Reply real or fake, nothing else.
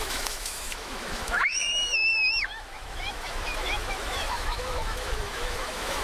fake